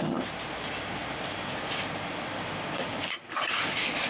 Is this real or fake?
real